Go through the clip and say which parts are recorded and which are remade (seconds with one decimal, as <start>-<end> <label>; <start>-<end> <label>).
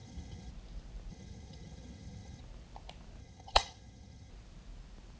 0.0-0.5 remade; 0.5-1.1 recorded; 1.1-2.4 remade; 2.4-3.2 recorded; 3.2-4.3 remade; 4.3-5.2 recorded